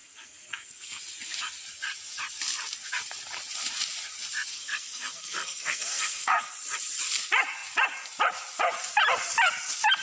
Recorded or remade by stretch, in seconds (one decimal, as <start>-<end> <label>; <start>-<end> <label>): 0.0-1.0 remade; 1.0-4.5 recorded; 4.5-6.5 remade; 6.5-10.0 recorded